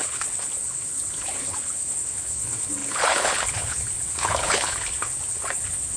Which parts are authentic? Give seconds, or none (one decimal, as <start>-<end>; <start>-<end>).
none